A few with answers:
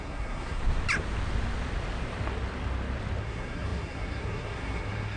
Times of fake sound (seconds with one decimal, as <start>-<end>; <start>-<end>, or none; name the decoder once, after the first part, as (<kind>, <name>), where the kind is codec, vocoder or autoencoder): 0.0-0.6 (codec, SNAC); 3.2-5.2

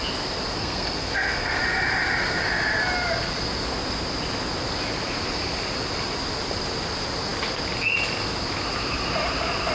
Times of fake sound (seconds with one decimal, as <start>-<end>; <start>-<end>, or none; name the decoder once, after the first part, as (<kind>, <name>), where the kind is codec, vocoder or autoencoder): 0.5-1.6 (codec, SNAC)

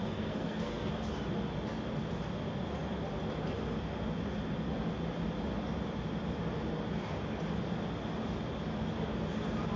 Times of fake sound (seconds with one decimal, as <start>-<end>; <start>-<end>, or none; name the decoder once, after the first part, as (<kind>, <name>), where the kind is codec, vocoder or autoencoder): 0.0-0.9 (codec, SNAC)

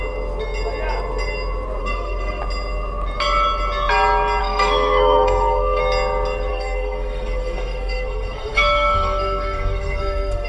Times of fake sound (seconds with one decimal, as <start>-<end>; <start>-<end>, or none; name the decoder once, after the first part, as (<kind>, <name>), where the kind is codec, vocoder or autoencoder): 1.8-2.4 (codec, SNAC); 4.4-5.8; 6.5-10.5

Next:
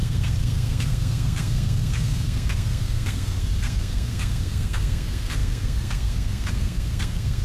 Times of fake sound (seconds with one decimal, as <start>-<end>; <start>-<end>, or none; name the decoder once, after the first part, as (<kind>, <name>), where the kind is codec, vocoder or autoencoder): 0.0-7.4 (codec, SNAC)

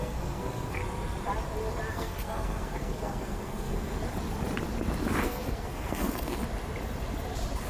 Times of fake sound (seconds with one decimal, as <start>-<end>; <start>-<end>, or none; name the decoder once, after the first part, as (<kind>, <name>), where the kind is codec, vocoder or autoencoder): 0.0-0.8 (codec, SNAC); 1.9-3.9; 5.2-6.4

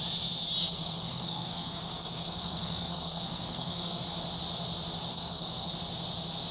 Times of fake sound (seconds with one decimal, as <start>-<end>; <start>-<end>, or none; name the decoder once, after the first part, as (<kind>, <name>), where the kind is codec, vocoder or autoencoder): 0.6-4.0 (codec, SNAC); 5.1-5.7

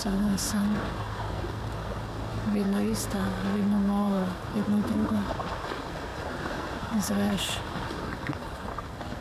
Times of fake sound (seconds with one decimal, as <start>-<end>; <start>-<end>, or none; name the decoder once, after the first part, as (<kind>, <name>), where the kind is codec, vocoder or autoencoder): 0.0-9.2 (codec, SNAC)